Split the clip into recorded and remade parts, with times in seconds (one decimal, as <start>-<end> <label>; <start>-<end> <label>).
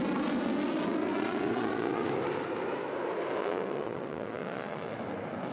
0.0-1.1 recorded; 1.1-2.1 remade; 2.1-3.4 recorded; 3.4-5.0 remade; 5.0-5.5 recorded